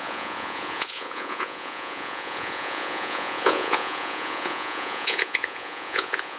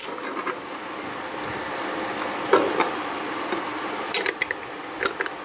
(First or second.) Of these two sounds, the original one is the second